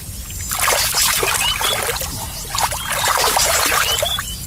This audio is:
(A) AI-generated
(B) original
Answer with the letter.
B